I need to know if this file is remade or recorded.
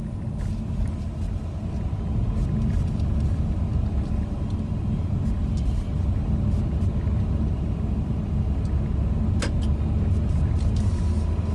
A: recorded